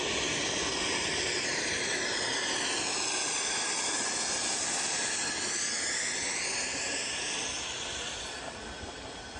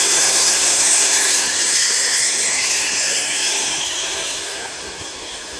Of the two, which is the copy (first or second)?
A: second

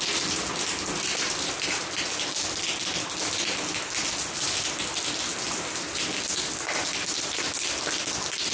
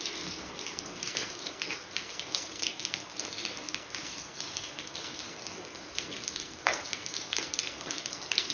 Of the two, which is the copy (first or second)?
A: second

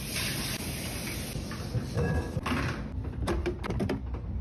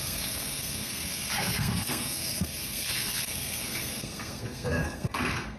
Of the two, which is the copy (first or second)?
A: second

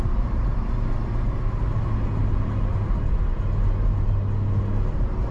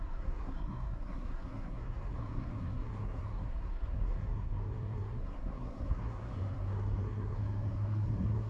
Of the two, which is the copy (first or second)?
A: second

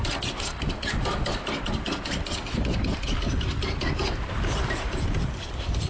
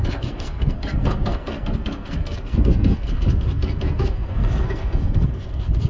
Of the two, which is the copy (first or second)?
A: second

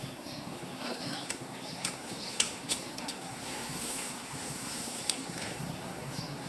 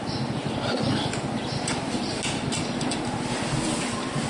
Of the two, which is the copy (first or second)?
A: first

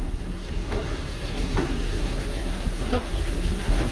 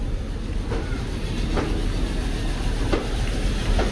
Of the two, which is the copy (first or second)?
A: first